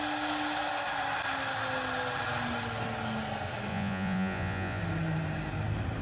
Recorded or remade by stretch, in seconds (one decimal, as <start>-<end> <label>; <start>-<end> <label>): 0.0-3.7 recorded; 3.7-4.8 remade; 4.8-6.0 recorded